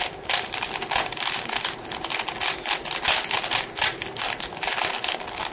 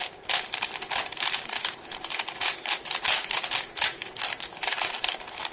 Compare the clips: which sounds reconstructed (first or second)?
second